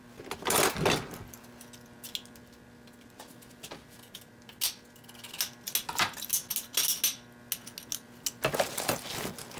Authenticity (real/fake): real